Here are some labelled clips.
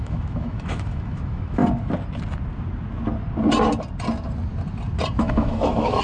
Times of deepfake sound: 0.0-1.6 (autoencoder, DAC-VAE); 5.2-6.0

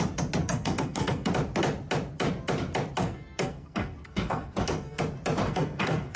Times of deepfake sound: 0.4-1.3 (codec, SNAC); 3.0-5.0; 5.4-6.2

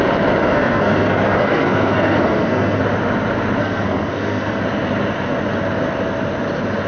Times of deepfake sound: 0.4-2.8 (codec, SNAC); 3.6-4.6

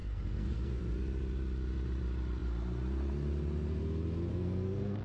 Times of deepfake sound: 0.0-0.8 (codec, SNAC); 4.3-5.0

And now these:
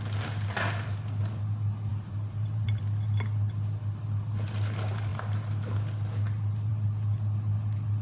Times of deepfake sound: 1.9-2.8 (vocoder, BigVGAN v2)

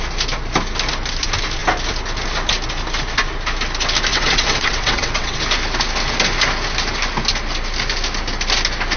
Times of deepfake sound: 4.1-5.4 (vocoder, WaveNeXt)